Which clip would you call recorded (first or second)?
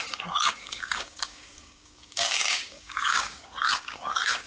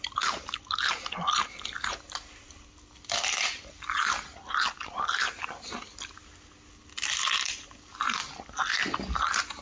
second